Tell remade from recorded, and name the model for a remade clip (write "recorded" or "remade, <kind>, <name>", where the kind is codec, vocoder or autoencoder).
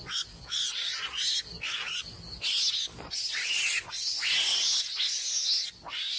recorded